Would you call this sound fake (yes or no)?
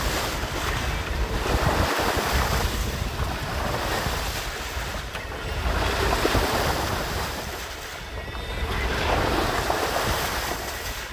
no